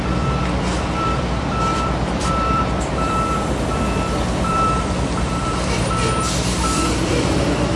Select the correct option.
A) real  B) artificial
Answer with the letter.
B